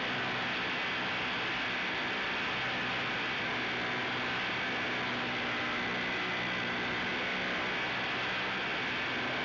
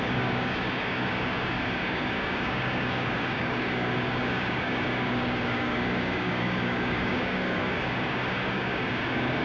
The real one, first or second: first